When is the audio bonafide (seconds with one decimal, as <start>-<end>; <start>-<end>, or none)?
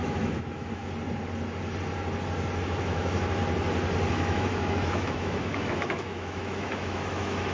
0.8-2.6; 3.4-4.1